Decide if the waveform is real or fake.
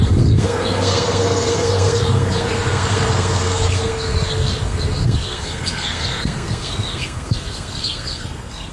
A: fake